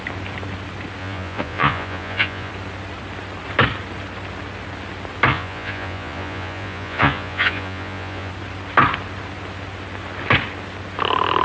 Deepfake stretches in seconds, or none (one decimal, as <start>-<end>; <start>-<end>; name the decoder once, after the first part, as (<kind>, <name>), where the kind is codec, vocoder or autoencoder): 1.0-2.5 (vocoder, Vocos); 5.3-8.3